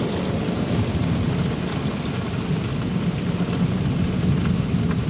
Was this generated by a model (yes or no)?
no